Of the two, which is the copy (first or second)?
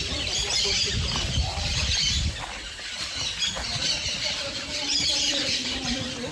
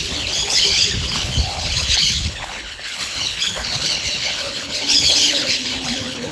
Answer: second